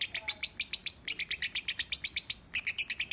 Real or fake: real